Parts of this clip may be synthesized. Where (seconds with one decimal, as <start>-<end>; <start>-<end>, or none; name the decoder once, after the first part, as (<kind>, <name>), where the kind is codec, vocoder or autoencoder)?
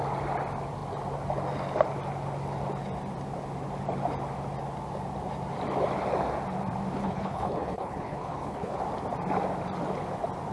7.0-8.8 (codec, HILCodec)